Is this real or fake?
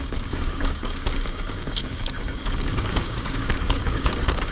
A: fake